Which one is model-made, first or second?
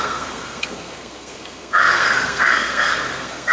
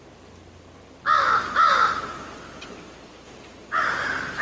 first